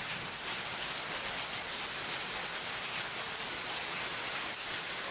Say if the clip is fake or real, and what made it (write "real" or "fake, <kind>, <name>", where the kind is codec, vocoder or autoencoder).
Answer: real